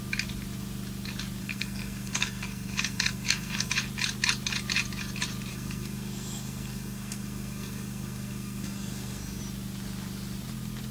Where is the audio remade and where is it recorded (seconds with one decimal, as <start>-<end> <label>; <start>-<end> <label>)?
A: 0.0-1.4 recorded; 1.4-3.7 remade; 3.7-5.5 recorded; 5.5-9.4 remade; 9.4-10.9 recorded